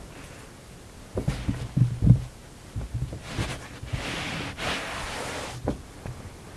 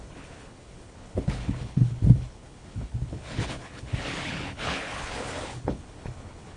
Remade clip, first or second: second